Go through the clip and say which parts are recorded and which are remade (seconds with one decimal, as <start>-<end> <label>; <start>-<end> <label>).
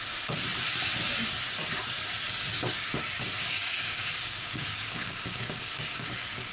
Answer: 0.0-2.5 recorded; 2.5-6.5 remade